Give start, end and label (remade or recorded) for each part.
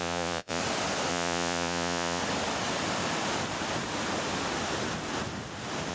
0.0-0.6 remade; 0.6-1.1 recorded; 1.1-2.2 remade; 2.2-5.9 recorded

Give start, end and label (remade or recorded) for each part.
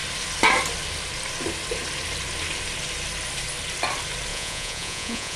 0.0-4.3 recorded; 4.3-5.4 remade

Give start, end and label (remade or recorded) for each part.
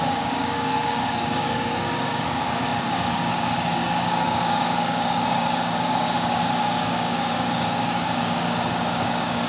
0.0-9.5 remade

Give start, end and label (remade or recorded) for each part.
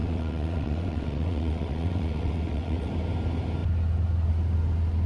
0.0-2.9 remade; 2.9-5.1 recorded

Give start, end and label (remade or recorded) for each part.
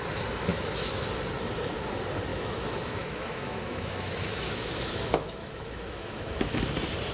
0.0-0.5 recorded; 0.5-1.0 remade; 1.0-2.3 recorded; 2.3-6.6 remade; 6.6-7.1 recorded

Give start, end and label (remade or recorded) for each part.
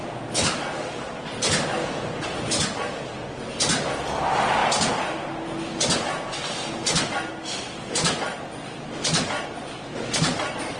0.0-10.8 recorded